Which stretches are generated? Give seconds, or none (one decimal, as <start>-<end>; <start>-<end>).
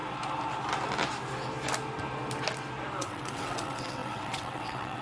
3.0-5.0